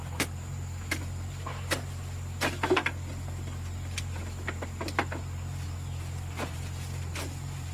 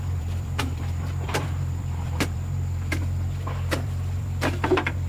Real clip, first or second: first